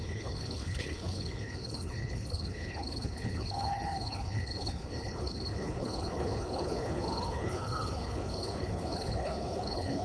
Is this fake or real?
fake